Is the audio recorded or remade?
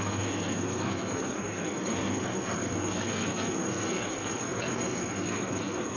remade